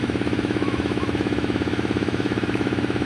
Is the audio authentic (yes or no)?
no